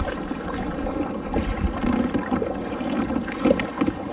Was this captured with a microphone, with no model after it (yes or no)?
no